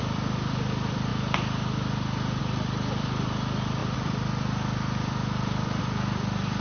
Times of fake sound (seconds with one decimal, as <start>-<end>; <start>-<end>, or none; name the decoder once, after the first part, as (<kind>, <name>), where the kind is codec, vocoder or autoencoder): 0.0-1.1 (vocoder, BigVGAN v2); 2.4-6.6